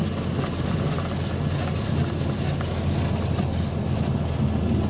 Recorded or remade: recorded